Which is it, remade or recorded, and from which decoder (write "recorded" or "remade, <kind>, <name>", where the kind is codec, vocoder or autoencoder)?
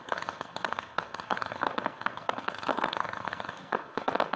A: remade, codec, SNAC